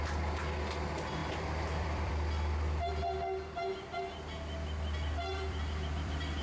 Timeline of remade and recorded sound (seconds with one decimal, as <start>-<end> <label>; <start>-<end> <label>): 0.0-1.2 recorded; 1.2-2.1 remade; 2.1-5.3 recorded; 5.3-6.4 remade

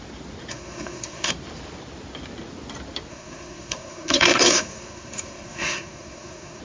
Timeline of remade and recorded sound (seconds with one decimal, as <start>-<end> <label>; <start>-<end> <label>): 0.0-0.5 recorded; 0.5-1.3 remade; 1.3-3.1 recorded; 3.1-6.6 remade